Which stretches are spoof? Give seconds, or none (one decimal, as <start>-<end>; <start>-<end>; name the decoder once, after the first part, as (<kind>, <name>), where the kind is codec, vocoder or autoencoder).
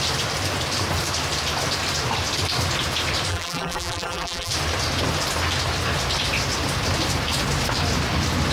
3.3-4.5 (vocoder, BigVGAN v2)